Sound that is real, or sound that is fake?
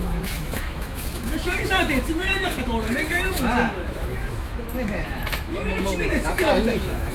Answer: fake